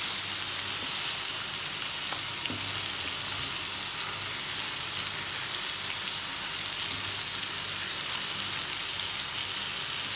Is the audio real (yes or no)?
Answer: yes